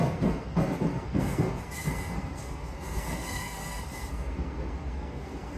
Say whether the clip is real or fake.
fake